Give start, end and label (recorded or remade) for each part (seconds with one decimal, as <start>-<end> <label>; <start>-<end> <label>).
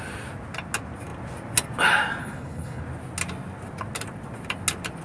0.0-2.2 recorded; 2.2-2.8 remade; 2.8-5.0 recorded